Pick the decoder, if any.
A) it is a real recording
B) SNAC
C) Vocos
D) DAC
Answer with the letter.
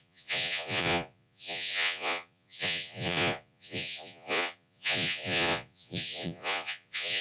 C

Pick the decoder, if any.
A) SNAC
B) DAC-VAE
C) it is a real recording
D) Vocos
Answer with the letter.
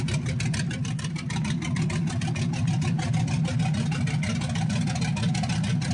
C